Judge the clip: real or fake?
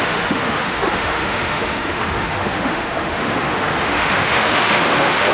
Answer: fake